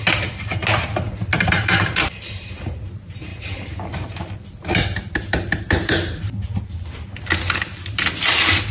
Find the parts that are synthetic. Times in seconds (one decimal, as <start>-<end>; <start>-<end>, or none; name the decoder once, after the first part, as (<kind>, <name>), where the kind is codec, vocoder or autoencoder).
1.3-2.2 (vocoder, BigVGAN v2); 3.3-6.2

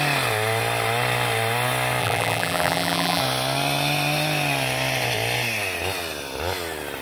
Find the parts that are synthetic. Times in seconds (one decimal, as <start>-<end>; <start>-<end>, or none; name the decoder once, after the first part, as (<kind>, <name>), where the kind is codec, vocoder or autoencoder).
2.0-3.2 (vocoder, BigVGAN v2)

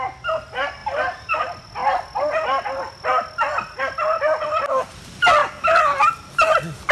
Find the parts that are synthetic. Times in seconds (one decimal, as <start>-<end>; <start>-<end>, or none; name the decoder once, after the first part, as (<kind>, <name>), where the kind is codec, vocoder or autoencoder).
none

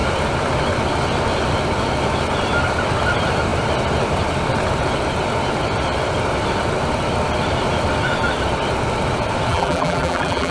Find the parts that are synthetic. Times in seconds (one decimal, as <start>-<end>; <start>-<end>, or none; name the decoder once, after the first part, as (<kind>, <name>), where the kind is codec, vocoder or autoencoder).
9.5-10.5 (vocoder, BigVGAN v2)

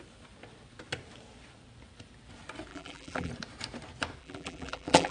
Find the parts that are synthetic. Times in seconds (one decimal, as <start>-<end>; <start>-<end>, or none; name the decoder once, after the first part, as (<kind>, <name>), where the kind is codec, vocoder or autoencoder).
2.7-3.3 (vocoder, BigVGAN v2); 4.2-5.1

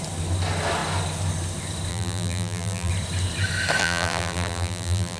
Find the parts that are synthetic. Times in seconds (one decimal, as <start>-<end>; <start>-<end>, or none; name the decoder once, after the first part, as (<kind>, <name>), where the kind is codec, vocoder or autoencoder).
1.9-2.9 (vocoder, BigVGAN v2); 3.8-5.2